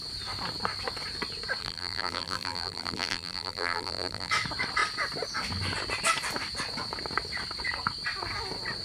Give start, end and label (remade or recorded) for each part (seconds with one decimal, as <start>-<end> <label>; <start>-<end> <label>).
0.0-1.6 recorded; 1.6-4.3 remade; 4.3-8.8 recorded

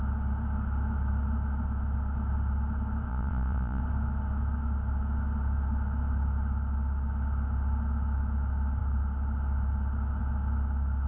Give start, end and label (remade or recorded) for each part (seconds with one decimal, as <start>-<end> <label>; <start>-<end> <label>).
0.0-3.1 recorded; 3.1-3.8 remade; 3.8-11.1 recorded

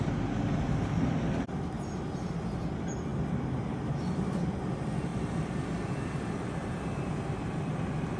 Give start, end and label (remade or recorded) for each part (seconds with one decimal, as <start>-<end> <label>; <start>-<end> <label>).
0.0-5.1 recorded; 5.1-7.1 remade; 7.1-8.2 recorded

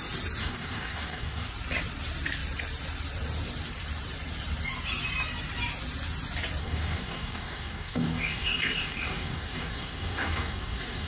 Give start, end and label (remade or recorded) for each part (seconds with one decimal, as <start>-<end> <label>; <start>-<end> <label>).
0.0-0.4 recorded; 0.4-1.5 remade; 1.5-6.6 recorded; 6.6-11.1 remade

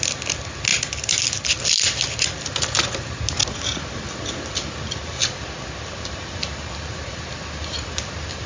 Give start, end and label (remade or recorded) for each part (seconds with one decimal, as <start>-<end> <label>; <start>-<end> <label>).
0.0-8.5 recorded

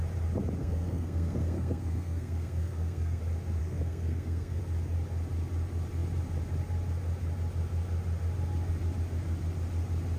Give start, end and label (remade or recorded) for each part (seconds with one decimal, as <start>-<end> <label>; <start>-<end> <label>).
0.0-0.6 recorded; 0.6-3.2 remade; 3.2-3.6 recorded; 3.6-4.6 remade; 4.6-10.2 recorded